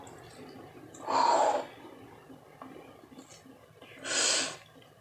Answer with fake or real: real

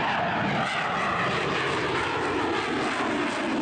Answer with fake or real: real